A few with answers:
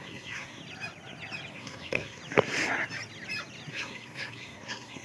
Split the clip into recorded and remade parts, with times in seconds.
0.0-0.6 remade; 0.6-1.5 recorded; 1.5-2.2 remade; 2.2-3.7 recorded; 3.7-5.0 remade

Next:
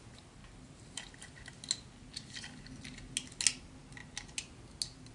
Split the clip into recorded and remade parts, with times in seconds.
0.0-5.1 recorded

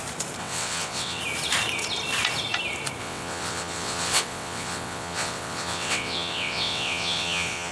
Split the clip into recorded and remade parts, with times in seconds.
0.0-0.4 recorded; 0.4-1.2 remade; 1.2-3.0 recorded; 3.0-7.7 remade

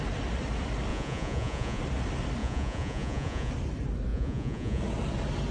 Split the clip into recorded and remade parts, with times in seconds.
0.0-0.9 recorded; 0.9-1.8 remade; 1.8-2.4 recorded; 2.4-3.5 remade; 3.5-4.1 recorded; 4.1-4.8 remade; 4.8-5.5 recorded

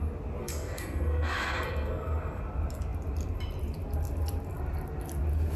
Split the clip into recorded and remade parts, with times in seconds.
0.0-0.4 recorded; 0.4-2.4 remade; 2.4-5.6 recorded

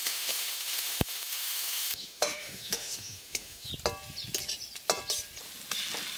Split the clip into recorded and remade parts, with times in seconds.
0.0-3.7 remade; 3.7-6.2 recorded

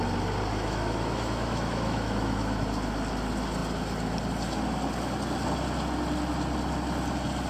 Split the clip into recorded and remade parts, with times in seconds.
0.0-0.5 recorded; 0.5-2.6 remade; 2.6-7.5 recorded

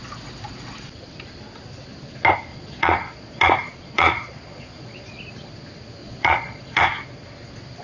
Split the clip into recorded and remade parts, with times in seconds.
0.0-2.5 recorded; 2.5-5.2 remade; 5.2-6.0 recorded; 6.0-6.8 remade; 6.8-7.8 recorded